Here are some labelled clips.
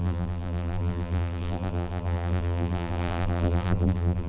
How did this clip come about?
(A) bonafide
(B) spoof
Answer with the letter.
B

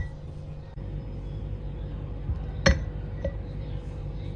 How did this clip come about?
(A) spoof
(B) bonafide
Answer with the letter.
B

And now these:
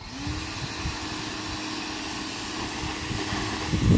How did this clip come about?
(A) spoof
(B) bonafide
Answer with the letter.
B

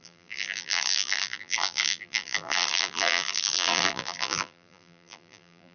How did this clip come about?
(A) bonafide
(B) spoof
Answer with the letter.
B